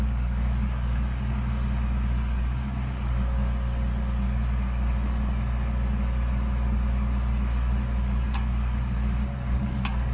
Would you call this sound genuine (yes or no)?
no